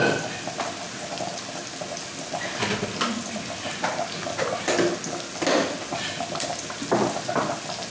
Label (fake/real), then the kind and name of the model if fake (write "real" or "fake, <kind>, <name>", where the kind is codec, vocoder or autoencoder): real